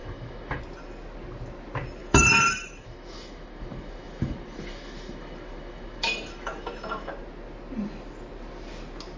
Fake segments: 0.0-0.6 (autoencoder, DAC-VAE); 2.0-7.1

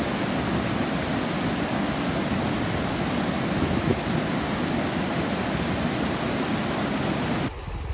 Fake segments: none

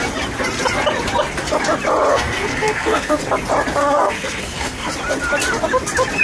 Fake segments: 2.1-3.2 (codec, SNAC); 3.8-4.9